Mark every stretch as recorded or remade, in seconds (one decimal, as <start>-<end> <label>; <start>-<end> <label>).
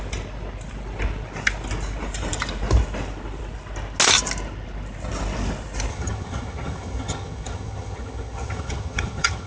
0.0-5.9 recorded; 5.9-9.5 remade